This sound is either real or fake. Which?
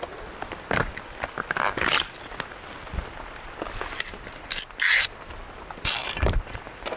real